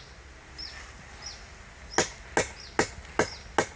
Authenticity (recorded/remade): recorded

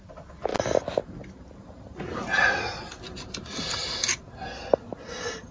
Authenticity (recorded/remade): recorded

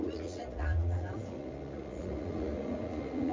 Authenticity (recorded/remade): remade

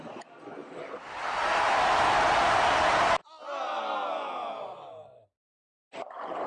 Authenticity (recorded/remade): recorded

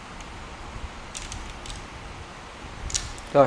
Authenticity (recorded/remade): recorded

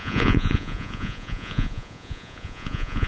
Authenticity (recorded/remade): remade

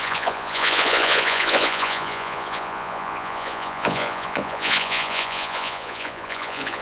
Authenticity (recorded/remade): remade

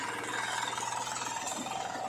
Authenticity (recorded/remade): recorded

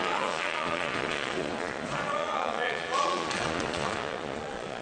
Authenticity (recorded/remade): remade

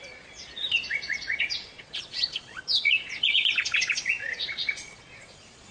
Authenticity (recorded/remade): remade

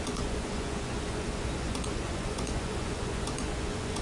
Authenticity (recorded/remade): remade